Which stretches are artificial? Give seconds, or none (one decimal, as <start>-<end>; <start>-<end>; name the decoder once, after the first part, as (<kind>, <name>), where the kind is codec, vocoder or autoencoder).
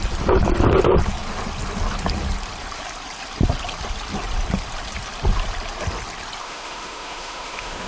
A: 6.4-7.9 (autoencoder, DAC-VAE)